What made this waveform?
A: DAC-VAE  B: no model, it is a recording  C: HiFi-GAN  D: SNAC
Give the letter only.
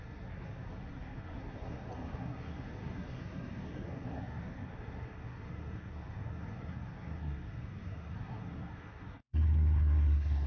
D